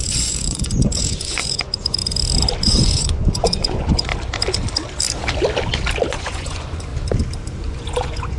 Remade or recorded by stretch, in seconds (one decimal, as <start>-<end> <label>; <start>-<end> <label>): 0.0-2.0 remade; 2.0-2.6 recorded; 2.6-4.1 remade; 4.1-6.1 recorded; 6.1-6.9 remade; 6.9-7.5 recorded; 7.5-8.4 remade